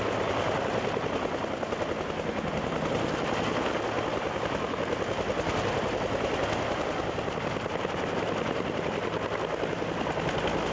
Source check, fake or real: real